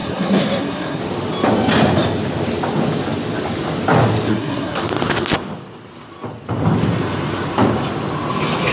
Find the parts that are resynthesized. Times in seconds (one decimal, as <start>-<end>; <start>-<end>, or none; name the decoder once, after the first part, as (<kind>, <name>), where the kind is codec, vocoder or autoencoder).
0.0-1.0 (codec, SNAC); 4.3-4.8